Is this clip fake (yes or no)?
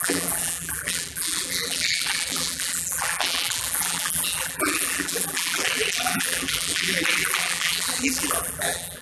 yes